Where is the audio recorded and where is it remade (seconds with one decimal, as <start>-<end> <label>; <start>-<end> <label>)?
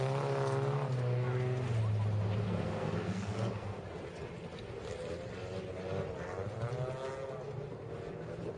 0.0-2.4 recorded; 2.4-3.8 remade; 3.8-8.6 recorded